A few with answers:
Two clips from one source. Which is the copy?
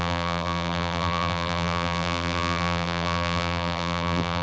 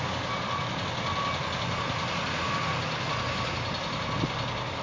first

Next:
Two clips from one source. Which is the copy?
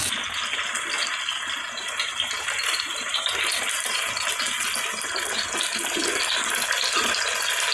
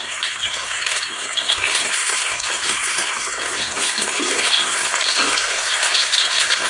second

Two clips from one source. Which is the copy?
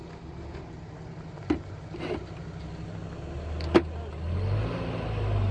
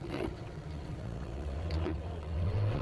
second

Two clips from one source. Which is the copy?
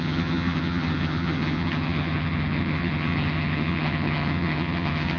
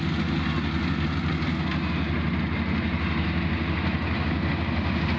first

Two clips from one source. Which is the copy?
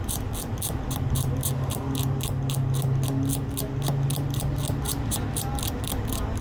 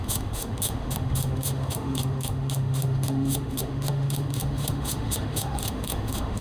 second